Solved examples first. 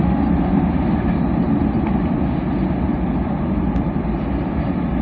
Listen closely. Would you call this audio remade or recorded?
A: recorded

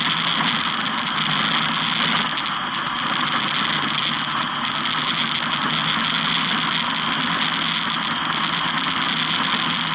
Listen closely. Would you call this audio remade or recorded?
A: recorded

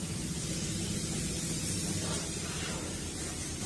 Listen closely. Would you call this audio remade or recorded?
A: remade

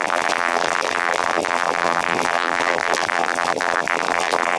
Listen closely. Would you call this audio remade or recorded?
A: remade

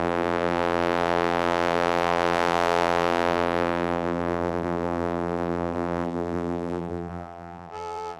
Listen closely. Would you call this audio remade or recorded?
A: remade